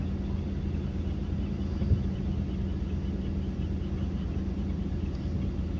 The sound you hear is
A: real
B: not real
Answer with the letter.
A